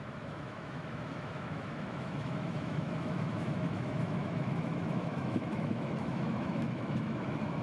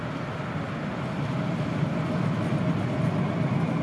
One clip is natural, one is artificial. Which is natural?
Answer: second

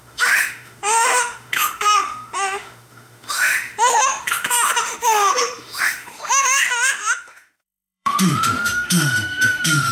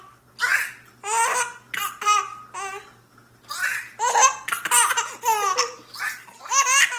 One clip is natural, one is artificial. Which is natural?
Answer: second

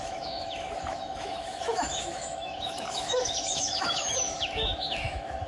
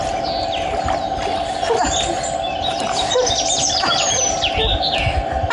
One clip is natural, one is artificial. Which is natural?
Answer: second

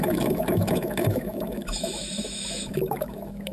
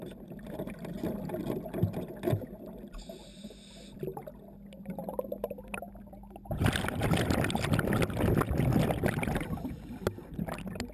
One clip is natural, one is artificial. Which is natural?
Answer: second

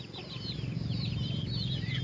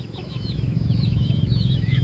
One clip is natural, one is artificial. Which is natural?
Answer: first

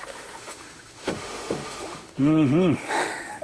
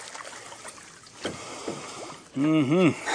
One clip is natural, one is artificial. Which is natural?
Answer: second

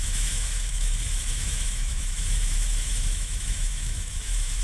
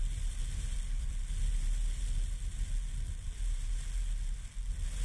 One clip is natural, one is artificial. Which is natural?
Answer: second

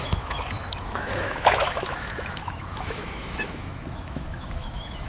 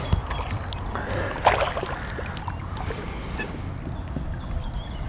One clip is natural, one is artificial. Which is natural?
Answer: second